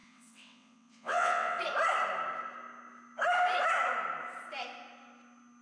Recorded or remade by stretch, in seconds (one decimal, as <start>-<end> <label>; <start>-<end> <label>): 0.0-1.6 remade; 1.6-5.6 recorded